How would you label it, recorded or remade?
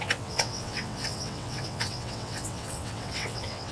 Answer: remade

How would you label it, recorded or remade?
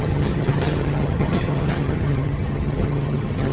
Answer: remade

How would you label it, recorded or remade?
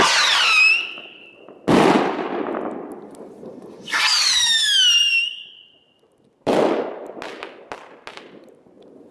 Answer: recorded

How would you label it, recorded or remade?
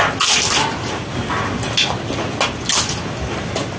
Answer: recorded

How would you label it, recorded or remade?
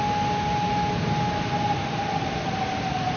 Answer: recorded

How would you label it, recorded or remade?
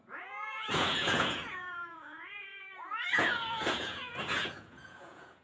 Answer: remade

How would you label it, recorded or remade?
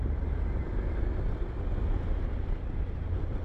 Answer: recorded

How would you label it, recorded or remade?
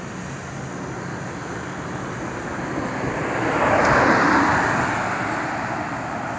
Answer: recorded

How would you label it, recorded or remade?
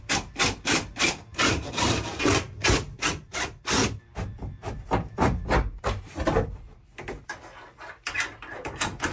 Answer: remade